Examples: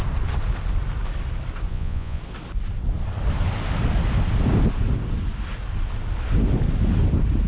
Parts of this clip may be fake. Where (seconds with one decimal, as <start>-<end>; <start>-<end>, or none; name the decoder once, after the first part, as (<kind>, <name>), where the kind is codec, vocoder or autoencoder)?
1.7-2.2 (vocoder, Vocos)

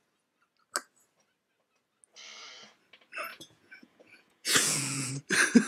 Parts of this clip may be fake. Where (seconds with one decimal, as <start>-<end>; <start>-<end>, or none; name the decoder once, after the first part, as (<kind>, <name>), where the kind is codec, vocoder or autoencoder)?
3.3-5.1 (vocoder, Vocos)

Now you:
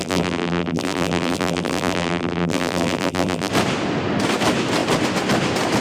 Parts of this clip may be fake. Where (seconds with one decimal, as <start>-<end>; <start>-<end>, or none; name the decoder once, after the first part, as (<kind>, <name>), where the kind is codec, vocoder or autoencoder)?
0.0-3.5 (vocoder, BigVGAN v2)

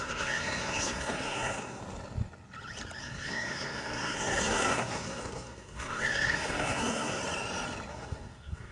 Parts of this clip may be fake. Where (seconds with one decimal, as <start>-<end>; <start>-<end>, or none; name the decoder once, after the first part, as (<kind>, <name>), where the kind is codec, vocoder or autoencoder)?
0.0-1.8 (codec, SNAC); 3.0-7.2; 7.9-8.7

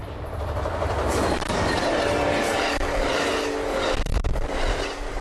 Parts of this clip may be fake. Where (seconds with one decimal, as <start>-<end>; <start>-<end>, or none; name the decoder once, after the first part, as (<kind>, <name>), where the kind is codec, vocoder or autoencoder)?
0.0-3.1 (vocoder, BigVGAN v2); 4.1-4.6